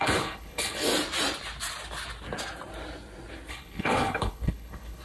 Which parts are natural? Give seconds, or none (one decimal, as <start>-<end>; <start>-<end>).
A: 0.9-3.5